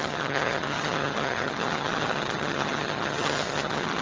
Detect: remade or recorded remade